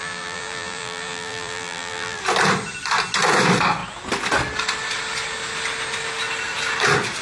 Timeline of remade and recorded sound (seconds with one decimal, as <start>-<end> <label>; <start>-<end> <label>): 0.0-2.2 remade; 2.2-7.2 recorded